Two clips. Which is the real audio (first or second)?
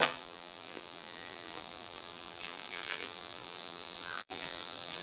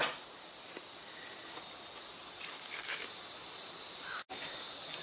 second